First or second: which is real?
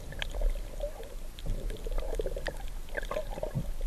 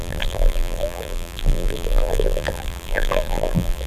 first